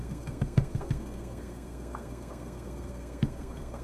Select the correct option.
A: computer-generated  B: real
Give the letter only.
A